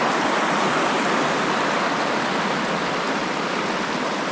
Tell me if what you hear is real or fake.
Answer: real